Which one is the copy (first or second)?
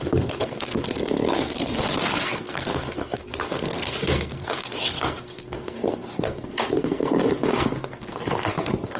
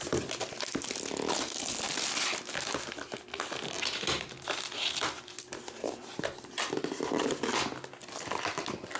first